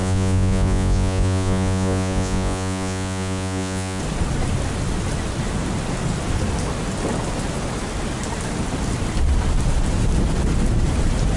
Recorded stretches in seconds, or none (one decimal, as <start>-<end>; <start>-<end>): 4.0-11.4